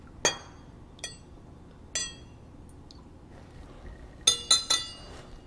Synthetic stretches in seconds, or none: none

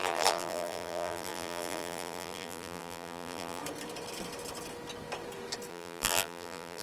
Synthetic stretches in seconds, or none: 0.0-3.6 (vocoder, BigVGAN v2); 5.7-6.8

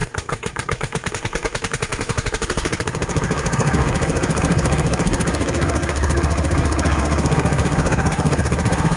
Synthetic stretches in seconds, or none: 0.0-9.0 (codec, SNAC)

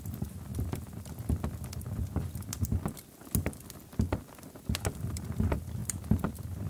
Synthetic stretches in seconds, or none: none

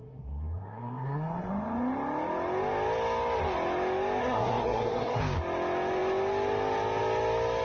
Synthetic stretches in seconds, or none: 0.0-1.5 (codec, SNAC); 4.2-5.2

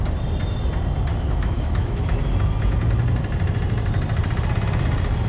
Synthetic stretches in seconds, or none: 1.1-2.2 (autoencoder, DAC-VAE)